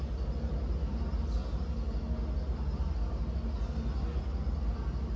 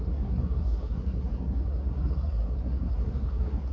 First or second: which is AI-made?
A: second